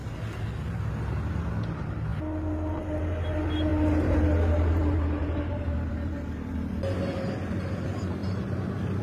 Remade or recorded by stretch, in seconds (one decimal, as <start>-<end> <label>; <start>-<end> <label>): 0.0-9.0 recorded